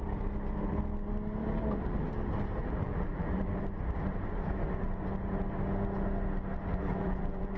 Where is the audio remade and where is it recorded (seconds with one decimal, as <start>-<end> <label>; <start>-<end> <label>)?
0.0-1.4 recorded; 1.4-2.1 remade; 2.1-2.6 recorded; 2.6-3.6 remade; 3.6-6.7 recorded; 6.7-7.6 remade